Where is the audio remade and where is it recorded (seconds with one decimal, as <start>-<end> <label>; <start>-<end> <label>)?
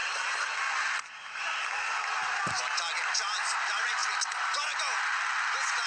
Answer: 0.0-5.9 recorded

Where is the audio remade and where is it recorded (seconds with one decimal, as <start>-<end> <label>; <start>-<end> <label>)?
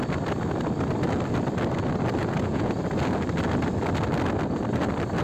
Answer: 0.0-2.2 recorded; 2.2-2.8 remade; 2.8-5.2 recorded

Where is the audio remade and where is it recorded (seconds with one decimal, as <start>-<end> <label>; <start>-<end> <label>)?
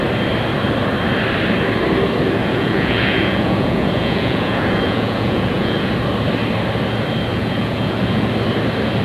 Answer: 0.0-2.4 recorded; 2.4-5.9 remade; 5.9-7.3 recorded; 7.3-8.3 remade; 8.3-9.0 recorded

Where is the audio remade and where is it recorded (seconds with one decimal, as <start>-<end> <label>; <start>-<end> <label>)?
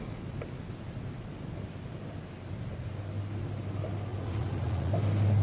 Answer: 0.0-4.1 recorded; 4.1-4.9 remade; 4.9-5.4 recorded